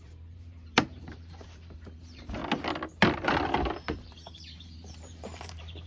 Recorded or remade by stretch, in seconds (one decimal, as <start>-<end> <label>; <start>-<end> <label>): 0.0-2.4 remade; 2.4-3.7 recorded; 3.7-5.9 remade

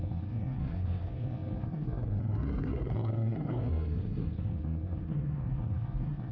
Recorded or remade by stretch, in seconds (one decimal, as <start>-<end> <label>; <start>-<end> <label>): 0.0-6.3 remade

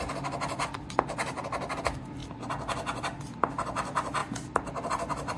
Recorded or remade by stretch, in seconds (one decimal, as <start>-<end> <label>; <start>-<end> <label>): 0.0-5.4 recorded

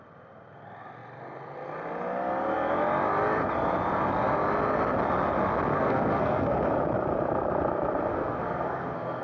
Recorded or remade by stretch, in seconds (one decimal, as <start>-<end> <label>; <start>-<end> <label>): 0.0-5.7 recorded; 5.7-6.7 remade; 6.7-8.1 recorded; 8.1-9.2 remade

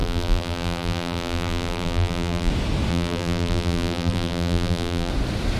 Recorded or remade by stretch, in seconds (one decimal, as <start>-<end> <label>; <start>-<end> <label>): 0.0-2.5 remade; 2.5-2.9 recorded; 2.9-5.1 remade; 5.1-5.6 recorded